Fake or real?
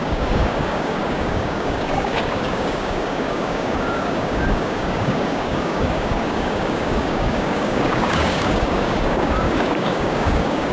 fake